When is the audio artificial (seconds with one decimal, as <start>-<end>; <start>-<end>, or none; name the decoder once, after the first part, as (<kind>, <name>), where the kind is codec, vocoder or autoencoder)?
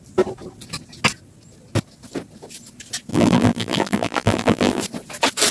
3.1-4.8 (vocoder, BigVGAN v2)